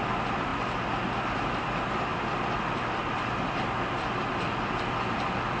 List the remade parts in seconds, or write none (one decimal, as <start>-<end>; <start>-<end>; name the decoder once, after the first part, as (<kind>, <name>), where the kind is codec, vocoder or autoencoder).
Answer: none